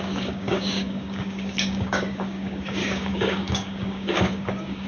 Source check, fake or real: fake